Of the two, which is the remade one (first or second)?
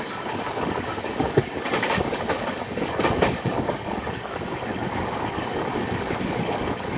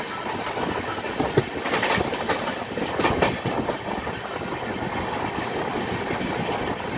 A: first